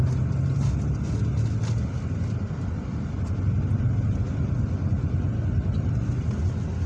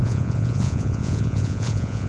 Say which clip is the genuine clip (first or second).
first